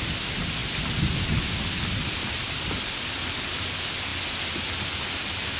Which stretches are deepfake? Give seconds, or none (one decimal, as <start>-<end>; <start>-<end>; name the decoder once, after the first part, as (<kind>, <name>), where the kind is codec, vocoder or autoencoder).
none